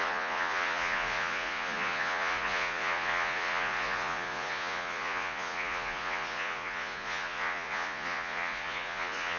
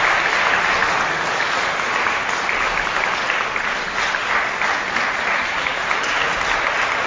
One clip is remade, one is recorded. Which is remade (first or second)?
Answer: first